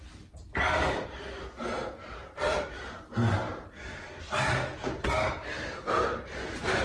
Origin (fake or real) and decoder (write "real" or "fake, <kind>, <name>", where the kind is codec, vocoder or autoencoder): real